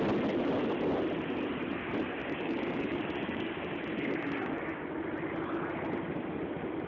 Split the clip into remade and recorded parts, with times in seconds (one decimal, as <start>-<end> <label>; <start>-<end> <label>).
0.0-2.2 recorded; 2.2-4.8 remade; 4.8-6.9 recorded